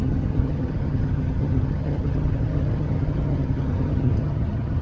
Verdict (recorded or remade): remade